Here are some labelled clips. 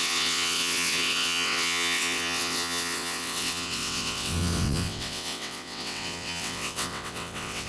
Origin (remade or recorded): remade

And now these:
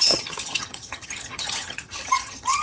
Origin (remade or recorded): remade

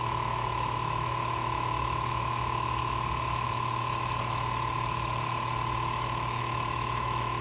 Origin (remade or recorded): remade